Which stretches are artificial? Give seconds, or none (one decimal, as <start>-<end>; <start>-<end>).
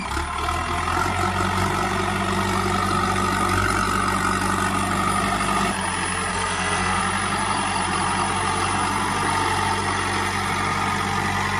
6.3-7.0